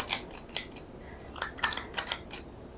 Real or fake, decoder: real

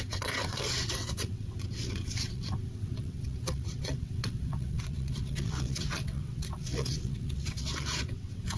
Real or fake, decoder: fake, vocoder, WaveNeXt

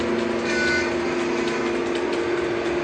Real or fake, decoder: real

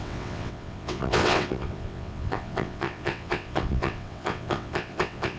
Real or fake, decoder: fake, vocoder, WaveNeXt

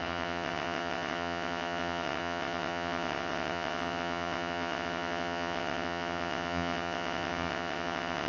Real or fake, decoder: fake, vocoder, WaveNeXt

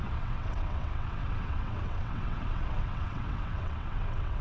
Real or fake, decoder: fake, vocoder, WaveNeXt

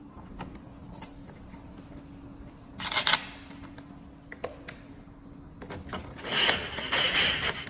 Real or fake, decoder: real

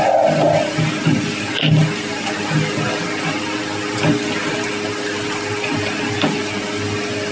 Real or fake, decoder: real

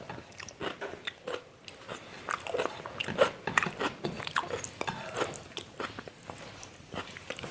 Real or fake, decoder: real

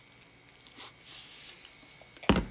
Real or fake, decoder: real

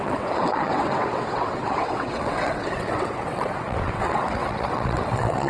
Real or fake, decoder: fake, vocoder, WaveNeXt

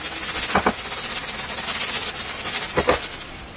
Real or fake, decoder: real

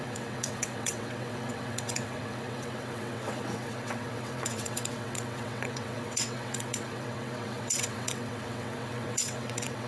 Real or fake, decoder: fake, vocoder, WaveNeXt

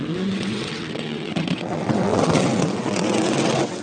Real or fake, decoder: fake, vocoder, WaveNeXt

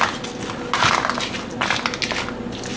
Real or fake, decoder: real